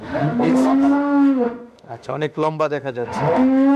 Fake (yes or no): yes